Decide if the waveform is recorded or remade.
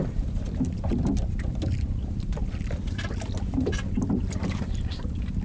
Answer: recorded